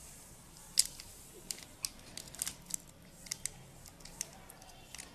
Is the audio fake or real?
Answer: real